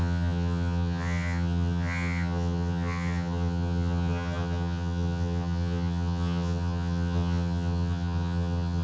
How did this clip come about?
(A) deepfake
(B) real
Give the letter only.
A